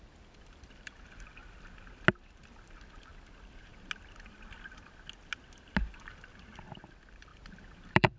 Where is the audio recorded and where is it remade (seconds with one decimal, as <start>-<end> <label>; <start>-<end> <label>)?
0.0-1.4 remade; 1.4-2.1 recorded; 2.1-3.7 remade; 3.7-6.6 recorded; 6.6-8.2 remade